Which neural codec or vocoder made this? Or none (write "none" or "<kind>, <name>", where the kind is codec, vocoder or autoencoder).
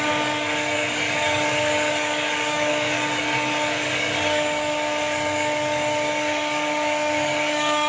codec, DAC